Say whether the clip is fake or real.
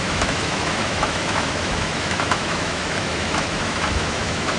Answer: fake